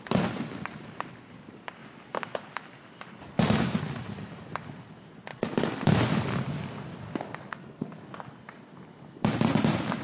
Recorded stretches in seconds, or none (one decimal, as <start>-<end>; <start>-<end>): 0.0-7.5; 8.0-10.0